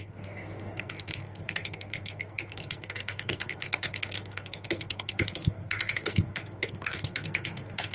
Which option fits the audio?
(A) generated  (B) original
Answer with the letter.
A